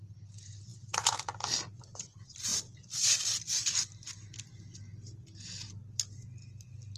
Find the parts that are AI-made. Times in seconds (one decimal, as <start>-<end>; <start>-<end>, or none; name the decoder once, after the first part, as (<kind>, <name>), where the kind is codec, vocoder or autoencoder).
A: 0.0-2.5 (vocoder, BigVGAN v2)